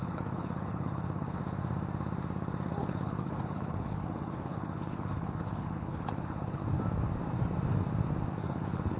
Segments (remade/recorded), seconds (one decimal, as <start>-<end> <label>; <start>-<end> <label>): 0.0-1.4 remade; 1.4-2.8 recorded; 2.8-6.6 remade; 6.6-8.3 recorded; 8.3-9.0 remade